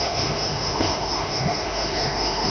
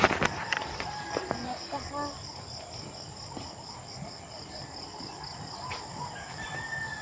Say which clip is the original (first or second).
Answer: second